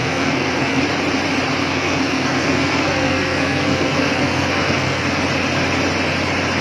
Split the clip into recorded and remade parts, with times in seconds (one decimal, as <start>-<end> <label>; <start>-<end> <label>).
0.0-0.8 remade; 0.8-1.6 recorded; 1.6-5.2 remade; 5.2-6.6 recorded